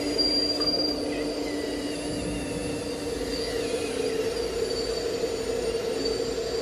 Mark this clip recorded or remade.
recorded